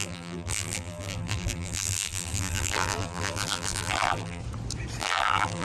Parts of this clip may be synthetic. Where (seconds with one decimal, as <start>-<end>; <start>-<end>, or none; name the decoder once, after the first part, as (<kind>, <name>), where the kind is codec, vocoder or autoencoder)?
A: 0.0-4.4 (vocoder, BigVGAN v2); 5.0-5.6